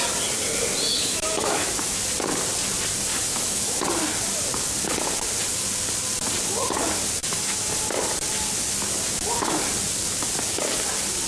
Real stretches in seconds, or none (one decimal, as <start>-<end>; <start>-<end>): 0.0-0.9; 2.0-3.1; 3.8-7.2; 7.7-11.3